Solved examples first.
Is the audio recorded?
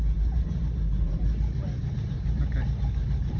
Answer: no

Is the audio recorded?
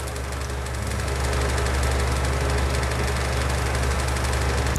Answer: yes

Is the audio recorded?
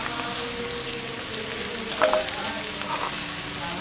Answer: yes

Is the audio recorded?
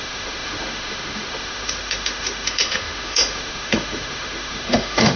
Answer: no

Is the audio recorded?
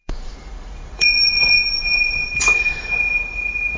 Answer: no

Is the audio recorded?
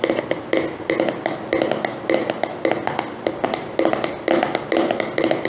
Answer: yes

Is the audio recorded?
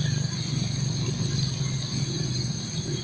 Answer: yes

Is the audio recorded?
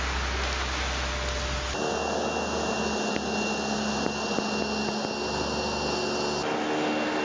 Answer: yes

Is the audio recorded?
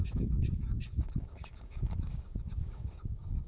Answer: no